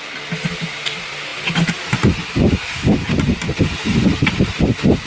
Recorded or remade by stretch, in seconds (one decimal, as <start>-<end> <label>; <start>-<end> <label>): 0.0-5.1 recorded